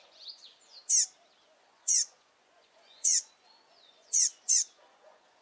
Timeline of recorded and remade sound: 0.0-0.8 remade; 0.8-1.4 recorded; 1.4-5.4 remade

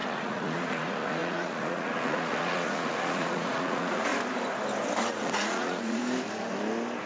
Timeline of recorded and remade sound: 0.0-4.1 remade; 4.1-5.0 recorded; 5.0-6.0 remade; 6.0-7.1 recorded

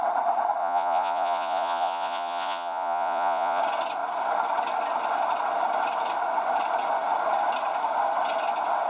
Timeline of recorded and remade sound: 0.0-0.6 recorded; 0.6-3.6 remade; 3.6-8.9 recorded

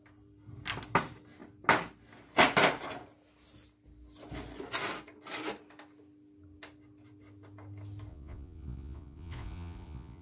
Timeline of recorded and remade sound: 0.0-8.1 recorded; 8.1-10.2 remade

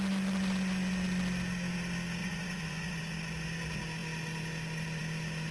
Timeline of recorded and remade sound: 0.0-2.2 recorded; 2.2-3.0 remade; 3.0-5.5 recorded

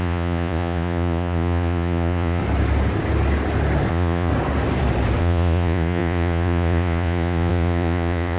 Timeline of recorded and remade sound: 0.0-2.4 remade; 2.4-3.9 recorded; 3.9-4.3 remade; 4.3-5.2 recorded; 5.2-8.4 remade

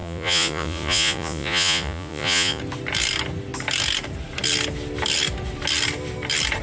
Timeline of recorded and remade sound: 0.0-2.6 remade; 2.6-6.6 recorded

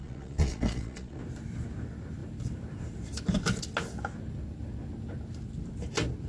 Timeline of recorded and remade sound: 0.0-1.2 remade; 1.2-6.3 recorded